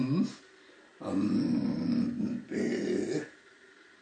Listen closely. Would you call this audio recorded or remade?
recorded